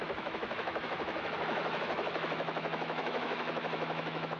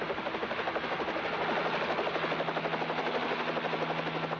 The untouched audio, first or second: second